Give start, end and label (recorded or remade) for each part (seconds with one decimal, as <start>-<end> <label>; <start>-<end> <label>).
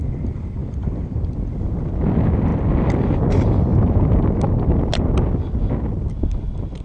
0.0-0.6 recorded; 0.6-1.2 remade; 1.2-3.7 recorded; 3.7-4.4 remade; 4.4-6.8 recorded